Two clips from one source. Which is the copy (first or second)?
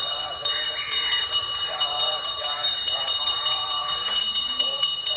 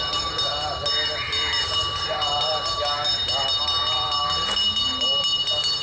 first